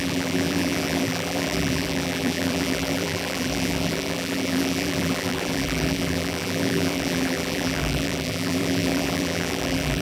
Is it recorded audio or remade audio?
remade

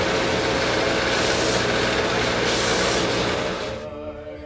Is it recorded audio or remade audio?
recorded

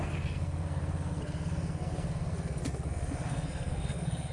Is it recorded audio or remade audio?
remade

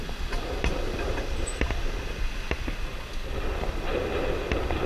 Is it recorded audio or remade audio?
recorded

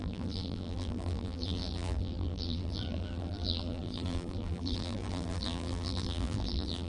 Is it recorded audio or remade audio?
remade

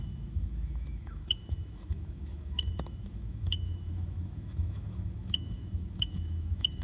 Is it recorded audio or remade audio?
remade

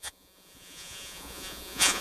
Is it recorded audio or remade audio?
remade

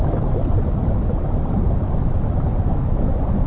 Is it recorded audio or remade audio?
recorded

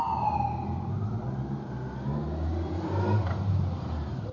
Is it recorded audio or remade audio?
recorded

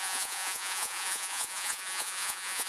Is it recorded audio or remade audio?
remade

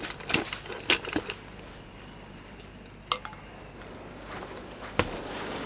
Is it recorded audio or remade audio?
recorded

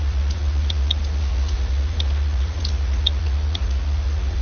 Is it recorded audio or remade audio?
remade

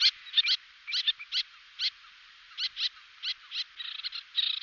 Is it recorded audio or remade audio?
recorded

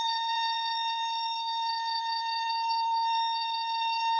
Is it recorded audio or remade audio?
remade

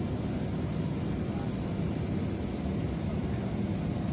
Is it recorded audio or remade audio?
recorded